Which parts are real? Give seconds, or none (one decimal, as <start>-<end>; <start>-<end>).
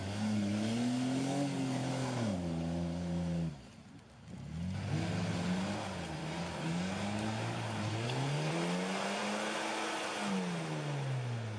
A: 3.5-6.2; 8.5-11.6